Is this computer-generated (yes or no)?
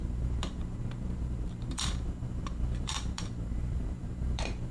yes